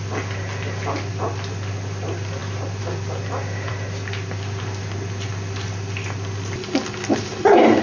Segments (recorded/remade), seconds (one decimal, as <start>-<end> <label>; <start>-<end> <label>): 0.0-7.8 recorded